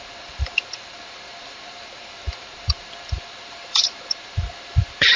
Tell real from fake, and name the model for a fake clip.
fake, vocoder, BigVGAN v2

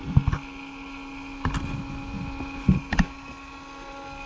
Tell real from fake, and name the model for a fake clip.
real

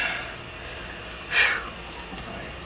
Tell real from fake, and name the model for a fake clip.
real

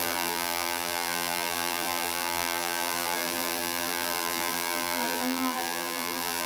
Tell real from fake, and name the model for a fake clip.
fake, vocoder, BigVGAN v2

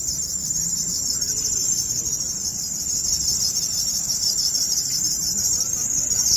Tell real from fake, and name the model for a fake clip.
fake, vocoder, BigVGAN v2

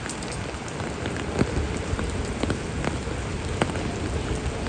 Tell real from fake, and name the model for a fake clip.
real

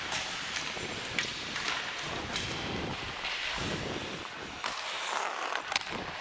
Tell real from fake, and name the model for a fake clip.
fake, vocoder, BigVGAN v2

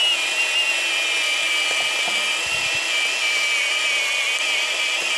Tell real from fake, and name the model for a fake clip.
real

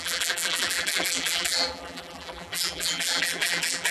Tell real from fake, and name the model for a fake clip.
fake, vocoder, BigVGAN v2